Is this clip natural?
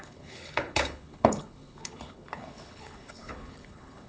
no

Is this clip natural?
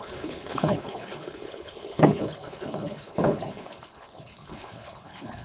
no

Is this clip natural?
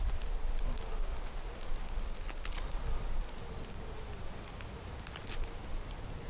yes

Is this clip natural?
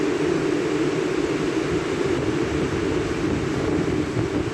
yes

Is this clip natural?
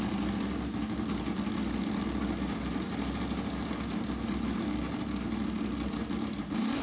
yes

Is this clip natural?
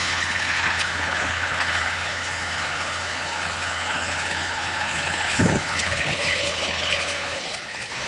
no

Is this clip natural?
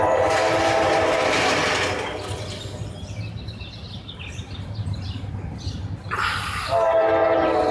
yes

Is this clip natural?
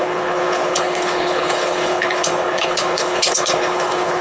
no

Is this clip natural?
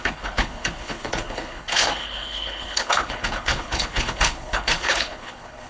no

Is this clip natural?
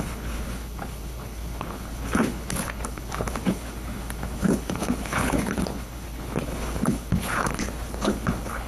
no